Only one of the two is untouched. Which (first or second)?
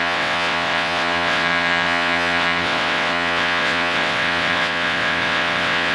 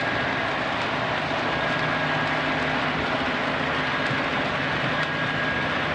second